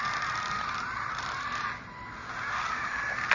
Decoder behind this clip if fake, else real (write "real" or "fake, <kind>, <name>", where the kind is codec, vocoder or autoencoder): real